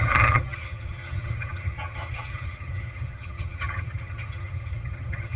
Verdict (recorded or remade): remade